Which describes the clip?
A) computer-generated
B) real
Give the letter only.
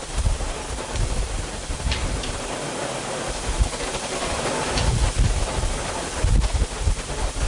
B